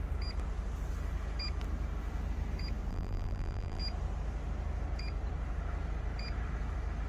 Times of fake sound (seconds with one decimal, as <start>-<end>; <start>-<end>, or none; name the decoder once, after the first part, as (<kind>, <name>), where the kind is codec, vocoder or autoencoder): 2.9-3.8 (vocoder, BigVGAN v2)